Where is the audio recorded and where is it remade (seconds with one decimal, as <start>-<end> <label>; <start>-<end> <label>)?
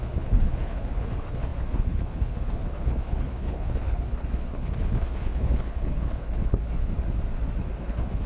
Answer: 0.0-6.9 remade; 6.9-7.8 recorded; 7.8-8.3 remade